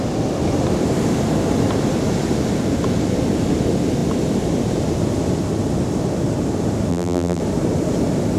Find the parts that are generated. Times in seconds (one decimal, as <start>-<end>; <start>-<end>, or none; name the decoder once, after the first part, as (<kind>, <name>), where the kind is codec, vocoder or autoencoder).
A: 6.9-7.4 (vocoder, BigVGAN v2)